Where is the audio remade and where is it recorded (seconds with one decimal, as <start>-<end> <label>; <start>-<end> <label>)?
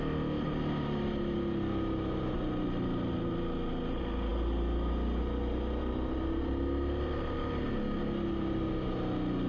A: 0.0-9.5 recorded